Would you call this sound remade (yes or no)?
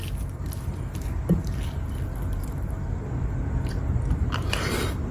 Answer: no